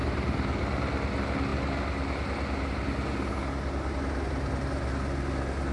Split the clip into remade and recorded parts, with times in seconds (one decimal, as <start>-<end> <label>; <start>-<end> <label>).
0.0-0.6 remade; 0.6-5.7 recorded